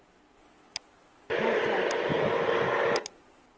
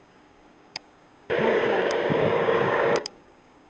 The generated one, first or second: second